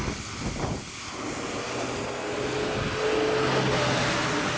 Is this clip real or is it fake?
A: real